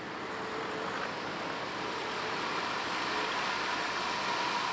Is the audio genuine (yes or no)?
yes